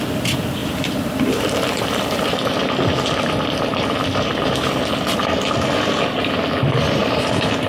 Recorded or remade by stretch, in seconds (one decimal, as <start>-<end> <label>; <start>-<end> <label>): 0.0-0.6 recorded; 0.6-4.8 remade; 4.8-7.0 recorded; 7.0-7.7 remade